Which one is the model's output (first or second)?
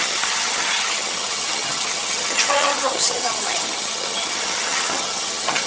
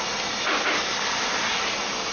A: first